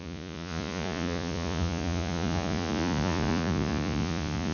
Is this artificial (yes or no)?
yes